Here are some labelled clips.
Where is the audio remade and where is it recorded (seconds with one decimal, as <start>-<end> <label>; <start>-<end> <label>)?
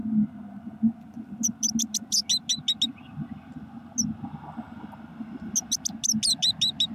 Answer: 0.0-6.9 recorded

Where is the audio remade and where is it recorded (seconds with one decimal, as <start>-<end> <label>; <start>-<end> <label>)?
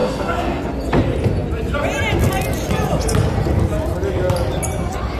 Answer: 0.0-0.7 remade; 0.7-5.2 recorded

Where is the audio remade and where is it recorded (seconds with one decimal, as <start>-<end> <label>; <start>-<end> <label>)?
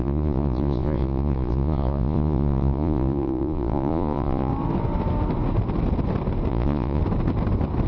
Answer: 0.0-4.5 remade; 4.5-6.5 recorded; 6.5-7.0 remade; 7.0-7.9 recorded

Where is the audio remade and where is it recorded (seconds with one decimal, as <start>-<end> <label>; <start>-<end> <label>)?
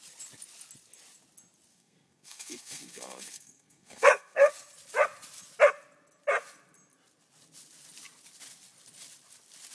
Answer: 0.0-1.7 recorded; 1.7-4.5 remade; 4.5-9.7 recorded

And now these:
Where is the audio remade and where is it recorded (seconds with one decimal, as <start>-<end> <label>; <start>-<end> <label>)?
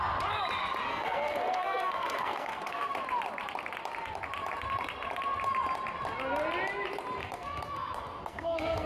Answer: 0.0-0.9 recorded; 0.9-2.9 remade; 2.9-7.2 recorded; 7.2-8.9 remade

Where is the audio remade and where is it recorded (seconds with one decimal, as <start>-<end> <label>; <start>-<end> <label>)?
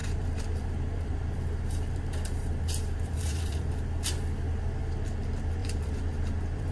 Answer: 0.0-3.7 remade; 3.7-5.6 recorded; 5.6-6.7 remade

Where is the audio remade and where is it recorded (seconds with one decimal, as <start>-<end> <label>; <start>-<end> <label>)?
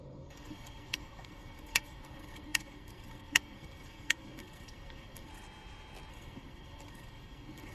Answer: 0.0-5.3 remade; 5.3-6.1 recorded; 6.1-7.7 remade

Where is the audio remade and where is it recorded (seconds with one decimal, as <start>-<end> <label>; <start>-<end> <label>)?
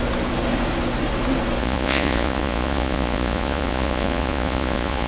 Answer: 0.0-1.6 recorded; 1.6-5.1 remade